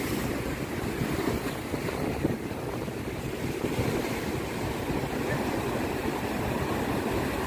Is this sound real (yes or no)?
yes